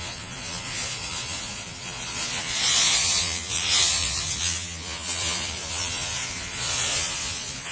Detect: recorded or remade remade